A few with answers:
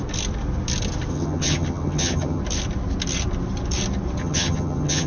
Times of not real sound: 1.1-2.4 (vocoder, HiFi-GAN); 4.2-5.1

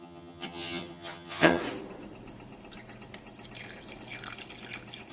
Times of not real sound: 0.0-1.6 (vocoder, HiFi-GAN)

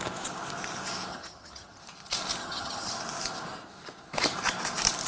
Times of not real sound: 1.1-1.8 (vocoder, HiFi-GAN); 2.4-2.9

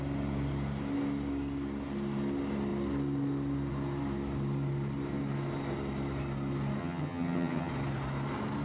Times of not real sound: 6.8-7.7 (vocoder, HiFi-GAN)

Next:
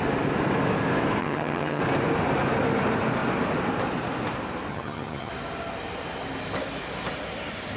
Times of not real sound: 1.2-1.8 (vocoder, HiFi-GAN); 4.7-5.3